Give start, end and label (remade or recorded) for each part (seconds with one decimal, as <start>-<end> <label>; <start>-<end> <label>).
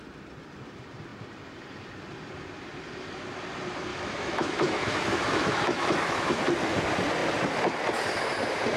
0.0-3.9 recorded; 3.9-6.4 remade; 6.4-8.8 recorded